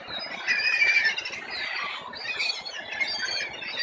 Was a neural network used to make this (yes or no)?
no